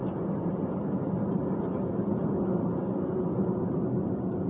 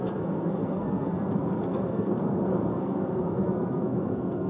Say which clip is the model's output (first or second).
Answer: second